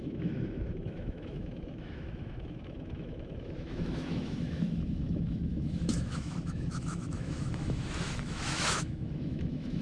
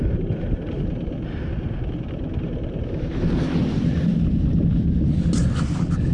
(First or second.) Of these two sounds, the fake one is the first